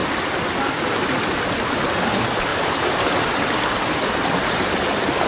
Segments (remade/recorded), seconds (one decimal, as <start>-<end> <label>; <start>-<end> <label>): 0.0-2.5 recorded; 2.5-3.5 remade; 3.5-5.3 recorded